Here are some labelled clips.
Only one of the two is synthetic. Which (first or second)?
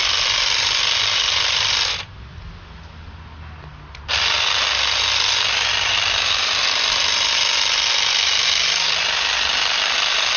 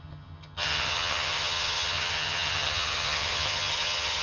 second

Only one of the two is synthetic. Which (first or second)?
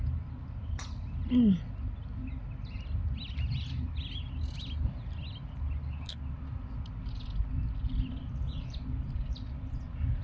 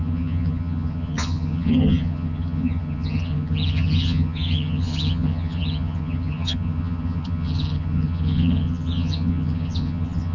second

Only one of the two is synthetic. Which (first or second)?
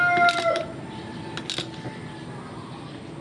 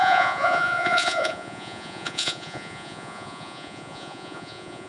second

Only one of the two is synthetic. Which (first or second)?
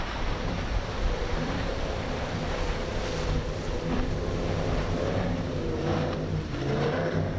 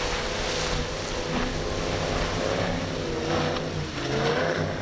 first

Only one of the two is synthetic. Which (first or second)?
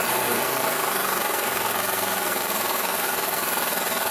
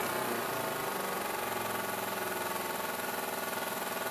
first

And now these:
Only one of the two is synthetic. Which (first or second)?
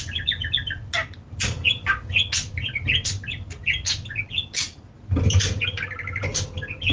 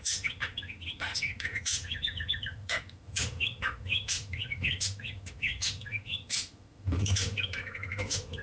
second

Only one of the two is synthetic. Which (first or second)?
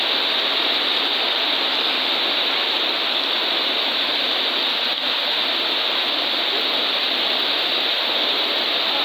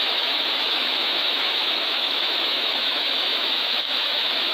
second